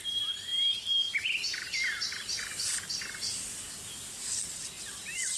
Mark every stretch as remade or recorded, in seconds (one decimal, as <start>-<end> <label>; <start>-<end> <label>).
0.0-5.4 recorded